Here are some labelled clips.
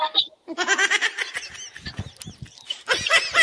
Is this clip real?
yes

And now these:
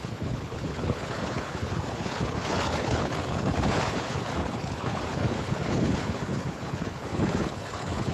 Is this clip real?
no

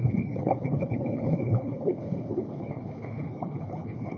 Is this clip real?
no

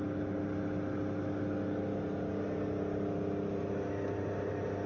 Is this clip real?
yes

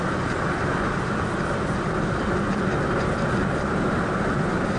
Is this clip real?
yes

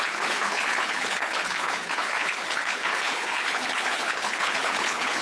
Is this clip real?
no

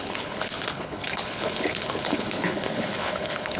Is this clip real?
no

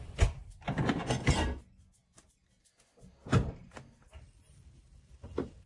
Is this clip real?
yes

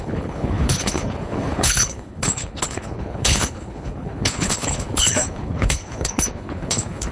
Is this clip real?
no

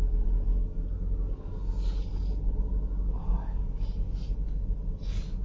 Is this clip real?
yes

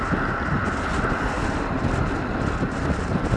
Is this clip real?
yes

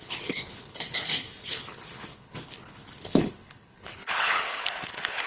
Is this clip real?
no